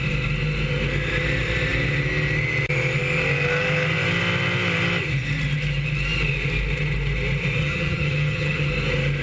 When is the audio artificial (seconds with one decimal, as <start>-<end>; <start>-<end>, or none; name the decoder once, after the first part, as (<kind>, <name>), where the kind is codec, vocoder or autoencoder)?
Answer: 7.6-8.7 (vocoder, HiFi-GAN)